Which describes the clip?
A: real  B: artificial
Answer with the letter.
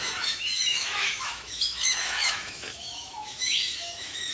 B